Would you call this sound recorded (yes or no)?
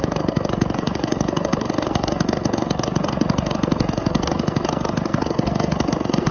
no